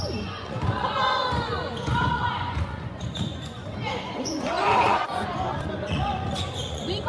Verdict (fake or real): fake